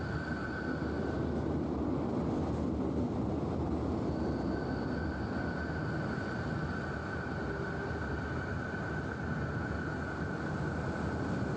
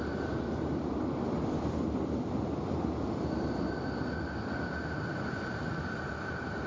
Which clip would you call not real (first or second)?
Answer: second